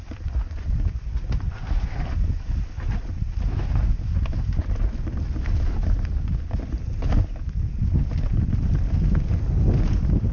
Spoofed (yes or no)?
no